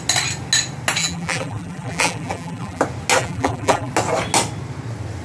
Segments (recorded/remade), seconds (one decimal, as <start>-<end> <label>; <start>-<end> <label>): 0.0-1.0 recorded; 1.0-2.8 remade; 2.8-3.2 recorded; 3.2-3.9 remade; 3.9-5.2 recorded